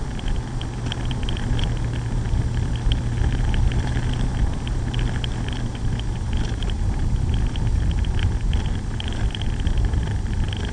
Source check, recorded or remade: recorded